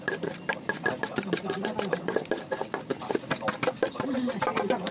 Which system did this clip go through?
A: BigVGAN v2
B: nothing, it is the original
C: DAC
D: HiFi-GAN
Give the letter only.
B